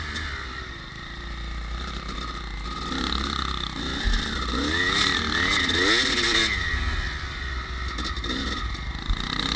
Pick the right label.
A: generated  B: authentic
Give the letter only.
B